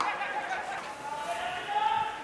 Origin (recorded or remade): recorded